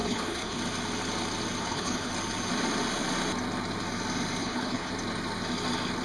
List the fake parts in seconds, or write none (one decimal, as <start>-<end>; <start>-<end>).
0.0-0.6; 1.6-2.1; 4.4-4.9